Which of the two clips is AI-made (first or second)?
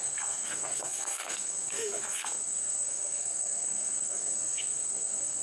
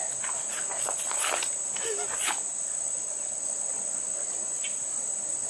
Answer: first